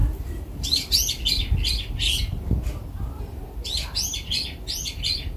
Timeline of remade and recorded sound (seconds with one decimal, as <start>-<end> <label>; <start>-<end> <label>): 0.0-5.4 recorded